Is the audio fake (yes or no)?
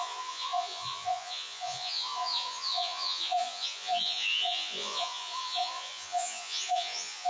yes